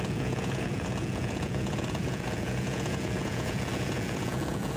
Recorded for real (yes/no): no